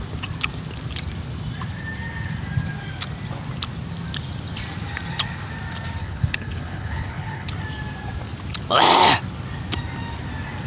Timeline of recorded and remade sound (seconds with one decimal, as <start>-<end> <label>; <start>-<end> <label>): 0.0-6.0 recorded; 6.0-7.5 remade; 7.5-10.7 recorded